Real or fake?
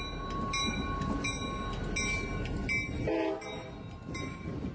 real